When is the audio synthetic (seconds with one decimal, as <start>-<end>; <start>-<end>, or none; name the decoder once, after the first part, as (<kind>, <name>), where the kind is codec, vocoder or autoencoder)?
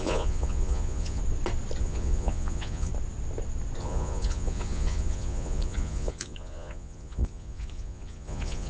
0.0-1.2 (vocoder, Vocos); 1.8-2.9; 3.8-8.7